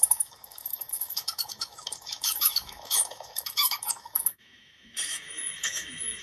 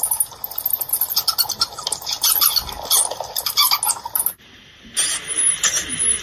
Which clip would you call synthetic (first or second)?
first